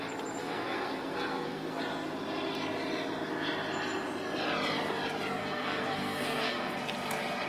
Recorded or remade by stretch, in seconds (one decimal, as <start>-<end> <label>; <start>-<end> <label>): 0.0-0.4 recorded; 0.4-1.8 remade; 1.8-5.4 recorded; 5.4-6.8 remade; 6.8-7.5 recorded